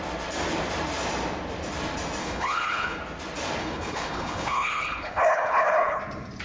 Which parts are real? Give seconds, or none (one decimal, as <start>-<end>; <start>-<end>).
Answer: 0.0-2.2; 3.0-3.6; 6.0-6.4